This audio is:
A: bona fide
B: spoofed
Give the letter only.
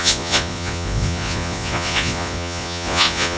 B